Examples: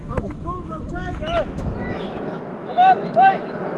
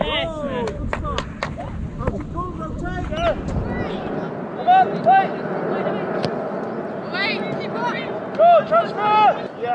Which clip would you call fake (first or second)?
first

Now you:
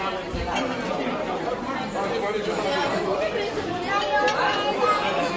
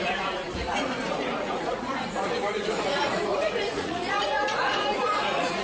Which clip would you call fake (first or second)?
second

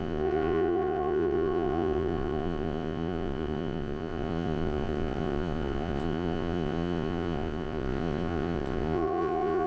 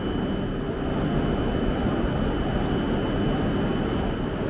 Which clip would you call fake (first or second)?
first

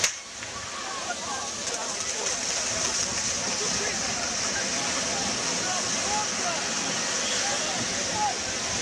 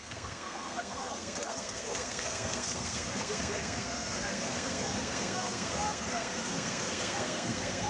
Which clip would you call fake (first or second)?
second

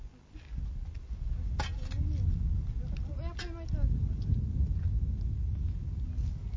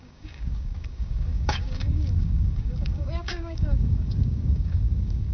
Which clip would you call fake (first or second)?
second